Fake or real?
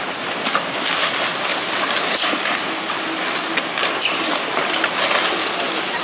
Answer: real